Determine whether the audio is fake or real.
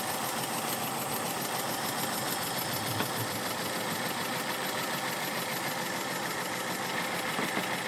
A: fake